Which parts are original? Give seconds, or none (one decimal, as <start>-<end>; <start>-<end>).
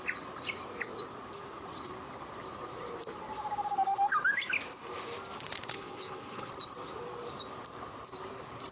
0.0-5.7; 6.5-8.7